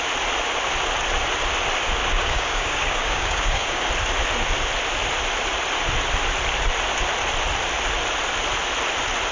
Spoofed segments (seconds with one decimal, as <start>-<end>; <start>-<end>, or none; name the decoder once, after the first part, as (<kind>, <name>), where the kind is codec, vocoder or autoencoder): 2.0-3.9 (codec, DAC)